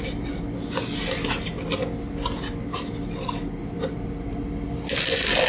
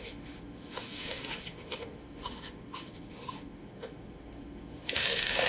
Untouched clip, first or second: first